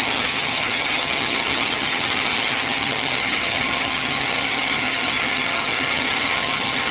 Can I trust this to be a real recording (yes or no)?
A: no